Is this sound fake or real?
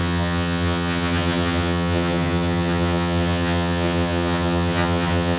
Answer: fake